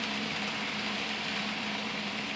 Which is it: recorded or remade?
remade